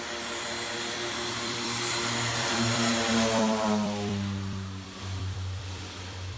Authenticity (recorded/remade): remade